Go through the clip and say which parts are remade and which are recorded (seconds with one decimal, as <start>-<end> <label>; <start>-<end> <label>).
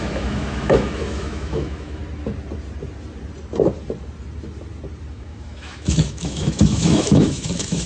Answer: 0.0-2.0 remade; 2.0-5.1 recorded; 5.1-7.9 remade